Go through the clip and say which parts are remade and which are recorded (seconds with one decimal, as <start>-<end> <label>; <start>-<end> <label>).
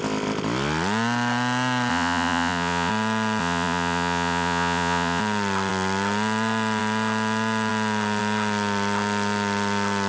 0.0-1.9 recorded; 1.9-2.9 remade; 2.9-3.4 recorded; 3.4-5.2 remade; 5.2-10.1 recorded